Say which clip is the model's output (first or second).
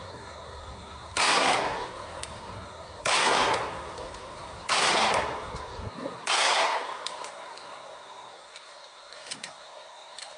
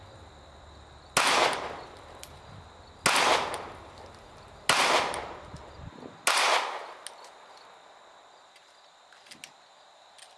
first